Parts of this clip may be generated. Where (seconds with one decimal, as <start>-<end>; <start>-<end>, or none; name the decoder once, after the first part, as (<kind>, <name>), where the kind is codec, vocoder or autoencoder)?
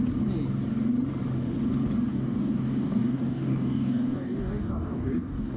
2.1-5.6 (codec, DAC)